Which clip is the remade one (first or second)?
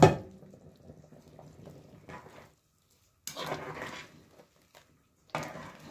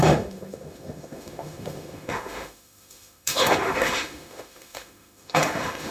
second